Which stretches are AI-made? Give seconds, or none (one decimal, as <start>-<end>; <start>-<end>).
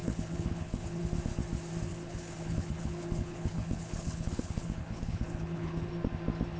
0.0-1.0; 1.9-5.9